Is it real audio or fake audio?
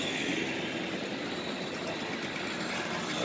real